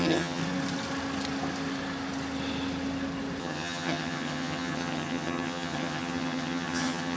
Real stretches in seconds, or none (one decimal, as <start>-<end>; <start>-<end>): 0.4-3.4